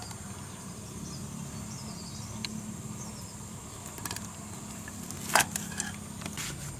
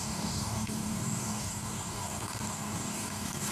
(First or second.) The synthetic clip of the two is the second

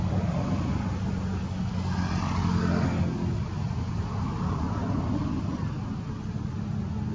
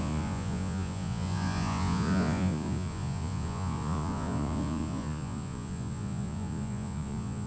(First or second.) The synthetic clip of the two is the second